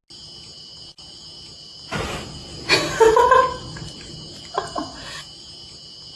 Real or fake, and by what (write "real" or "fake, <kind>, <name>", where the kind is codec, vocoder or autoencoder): real